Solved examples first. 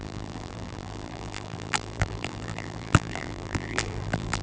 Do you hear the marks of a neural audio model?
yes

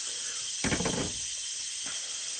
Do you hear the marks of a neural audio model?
no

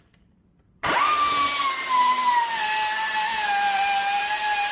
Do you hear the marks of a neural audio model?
yes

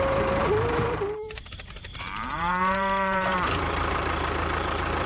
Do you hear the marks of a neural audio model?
yes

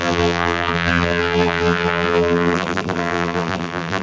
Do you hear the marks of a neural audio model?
yes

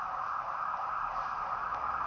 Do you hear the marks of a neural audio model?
no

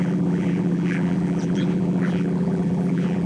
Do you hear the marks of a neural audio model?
yes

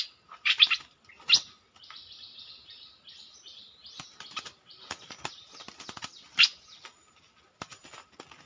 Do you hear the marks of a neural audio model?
no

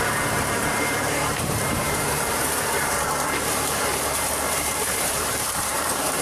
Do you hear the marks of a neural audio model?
yes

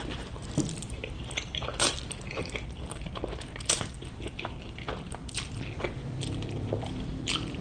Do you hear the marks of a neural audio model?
yes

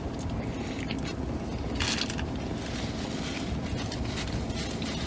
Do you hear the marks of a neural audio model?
no